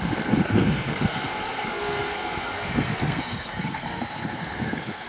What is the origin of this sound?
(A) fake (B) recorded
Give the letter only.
A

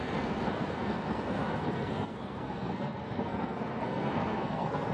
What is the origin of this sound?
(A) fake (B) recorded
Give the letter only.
A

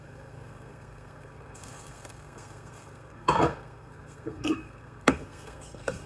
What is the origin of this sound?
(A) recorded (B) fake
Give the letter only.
B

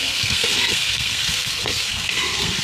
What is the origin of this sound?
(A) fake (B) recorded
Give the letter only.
A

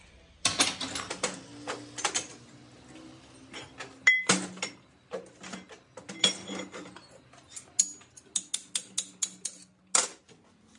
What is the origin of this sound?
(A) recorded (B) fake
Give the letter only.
A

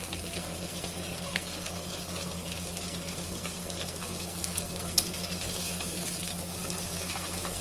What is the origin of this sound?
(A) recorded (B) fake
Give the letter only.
B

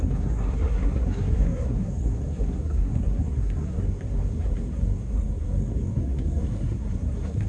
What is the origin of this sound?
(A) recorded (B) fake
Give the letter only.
B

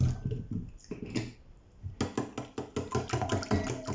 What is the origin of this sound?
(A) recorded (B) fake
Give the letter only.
A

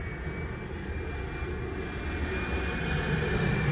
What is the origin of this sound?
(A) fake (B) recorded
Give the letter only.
B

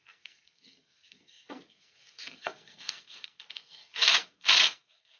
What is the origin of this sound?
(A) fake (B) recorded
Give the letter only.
A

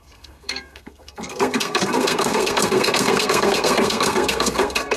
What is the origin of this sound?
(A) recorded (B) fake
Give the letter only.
B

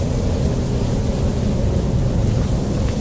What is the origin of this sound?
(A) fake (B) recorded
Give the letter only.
B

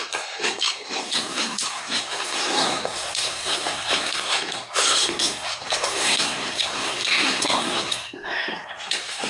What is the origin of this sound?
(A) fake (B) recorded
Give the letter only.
A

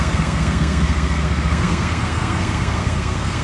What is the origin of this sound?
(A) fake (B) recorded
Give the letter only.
A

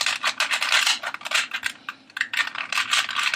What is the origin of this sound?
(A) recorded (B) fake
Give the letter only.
A